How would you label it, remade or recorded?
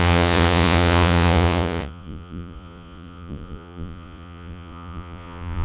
remade